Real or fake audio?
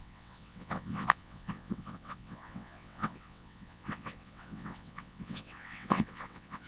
fake